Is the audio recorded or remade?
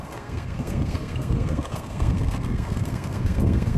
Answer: remade